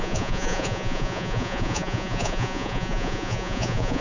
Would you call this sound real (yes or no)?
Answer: no